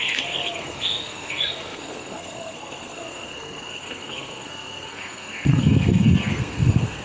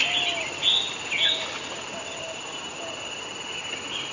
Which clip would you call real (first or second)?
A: second